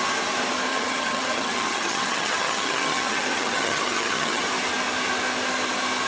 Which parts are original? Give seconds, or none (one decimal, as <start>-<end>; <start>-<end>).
0.0-0.7; 4.4-6.1